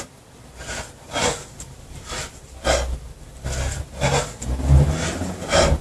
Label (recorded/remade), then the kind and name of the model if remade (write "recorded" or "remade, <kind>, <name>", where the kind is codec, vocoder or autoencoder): remade, vocoder, BigVGAN v2